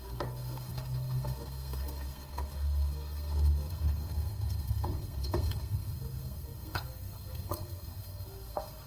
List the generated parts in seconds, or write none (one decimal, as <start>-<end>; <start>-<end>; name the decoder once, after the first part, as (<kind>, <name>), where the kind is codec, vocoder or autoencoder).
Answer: 0.0-8.9 (codec, SNAC)